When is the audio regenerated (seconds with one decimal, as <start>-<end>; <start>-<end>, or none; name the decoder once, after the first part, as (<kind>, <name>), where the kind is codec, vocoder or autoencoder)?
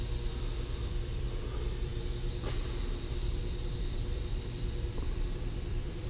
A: 0.0-1.9 (vocoder, BigVGAN v2); 2.5-6.1